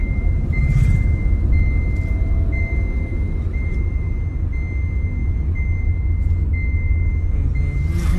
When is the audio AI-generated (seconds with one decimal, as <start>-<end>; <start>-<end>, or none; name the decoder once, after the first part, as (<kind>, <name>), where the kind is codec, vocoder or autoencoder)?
0.0-0.6 (vocoder, BigVGAN v2); 3.1-4.1